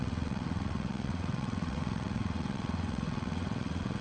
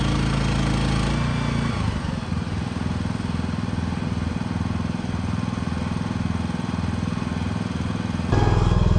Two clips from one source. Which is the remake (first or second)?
first